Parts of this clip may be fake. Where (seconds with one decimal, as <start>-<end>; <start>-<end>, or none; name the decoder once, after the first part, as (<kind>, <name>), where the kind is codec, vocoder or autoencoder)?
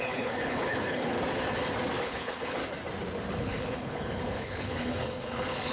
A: 0.0-1.1 (codec, HILCodec); 2.0-2.6; 3.3-5.7